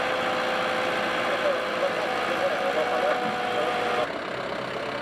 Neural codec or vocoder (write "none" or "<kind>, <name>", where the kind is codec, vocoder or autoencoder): none